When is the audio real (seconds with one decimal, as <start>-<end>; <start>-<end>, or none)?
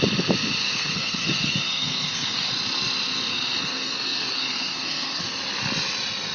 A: 0.0-0.6; 2.5-3.3; 5.2-6.3